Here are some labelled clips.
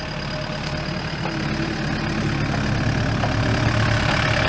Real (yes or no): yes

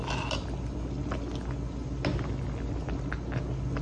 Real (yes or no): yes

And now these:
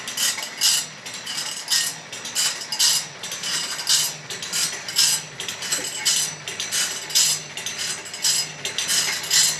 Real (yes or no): yes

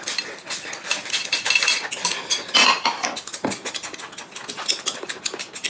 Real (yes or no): yes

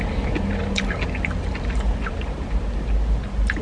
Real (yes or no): yes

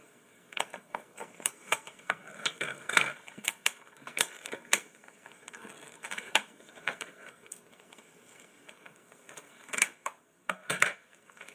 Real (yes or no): no